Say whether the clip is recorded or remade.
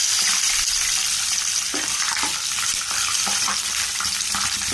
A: remade